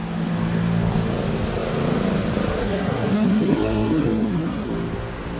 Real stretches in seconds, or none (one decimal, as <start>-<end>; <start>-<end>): 0.0-2.6; 4.7-5.4